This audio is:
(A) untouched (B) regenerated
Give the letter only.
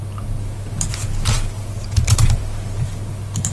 A